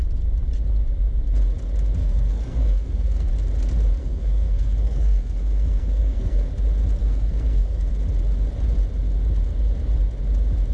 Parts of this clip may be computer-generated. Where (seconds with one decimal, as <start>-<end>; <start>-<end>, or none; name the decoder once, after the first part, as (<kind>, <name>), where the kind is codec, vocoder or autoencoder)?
2.0-3.3 (codec, SNAC); 4.0-6.5; 7.0-7.9